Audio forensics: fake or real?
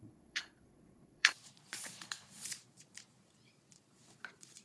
fake